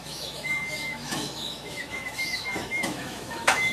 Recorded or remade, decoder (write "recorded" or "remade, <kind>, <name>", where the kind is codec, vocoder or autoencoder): remade, autoencoder, DAC-VAE